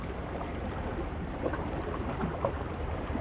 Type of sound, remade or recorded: remade